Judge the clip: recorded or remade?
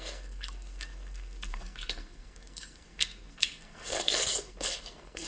remade